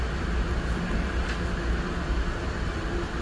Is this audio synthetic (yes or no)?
no